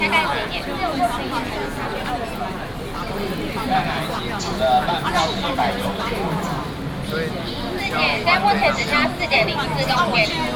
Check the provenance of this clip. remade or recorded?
recorded